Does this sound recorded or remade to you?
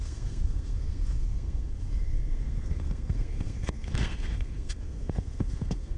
remade